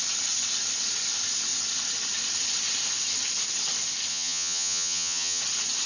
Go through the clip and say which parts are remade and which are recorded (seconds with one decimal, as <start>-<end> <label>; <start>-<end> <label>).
0.0-4.1 recorded; 4.1-5.4 remade; 5.4-5.9 recorded